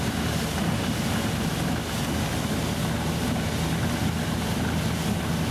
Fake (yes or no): no